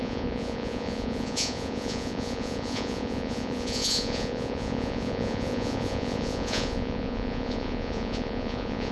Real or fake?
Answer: fake